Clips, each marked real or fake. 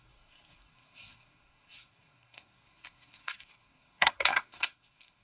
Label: fake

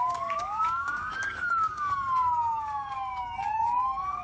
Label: fake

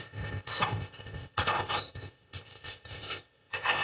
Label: fake